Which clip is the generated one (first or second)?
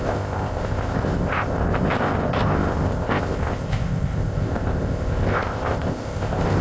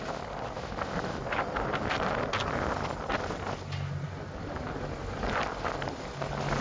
first